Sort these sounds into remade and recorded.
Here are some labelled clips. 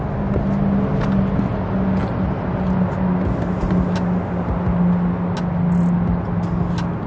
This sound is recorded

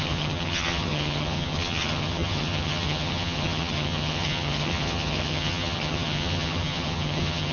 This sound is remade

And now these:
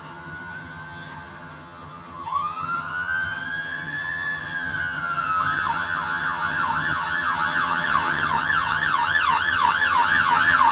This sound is remade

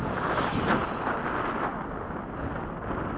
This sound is recorded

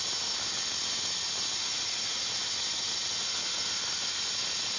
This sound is recorded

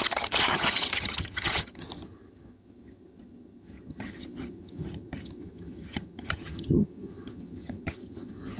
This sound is remade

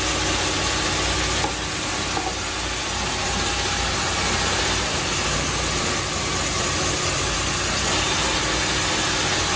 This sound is recorded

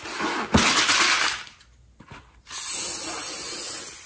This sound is recorded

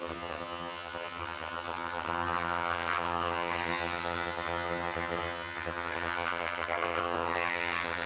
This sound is remade